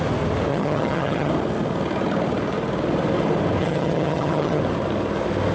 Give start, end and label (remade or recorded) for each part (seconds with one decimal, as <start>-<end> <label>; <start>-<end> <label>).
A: 0.0-0.5 recorded; 0.5-1.3 remade; 1.3-3.6 recorded; 3.6-4.6 remade; 4.6-5.5 recorded